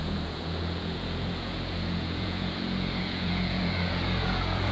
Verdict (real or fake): fake